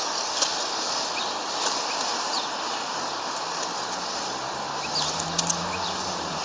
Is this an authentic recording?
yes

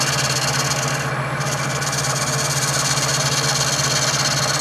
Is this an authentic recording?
yes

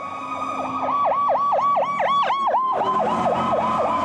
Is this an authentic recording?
yes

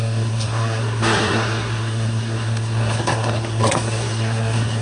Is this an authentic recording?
no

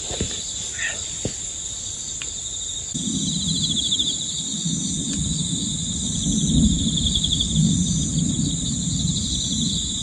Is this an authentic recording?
yes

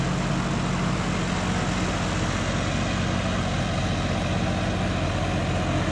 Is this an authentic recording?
yes